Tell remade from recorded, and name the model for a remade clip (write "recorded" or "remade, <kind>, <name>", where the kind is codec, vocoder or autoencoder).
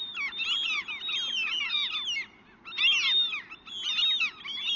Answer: recorded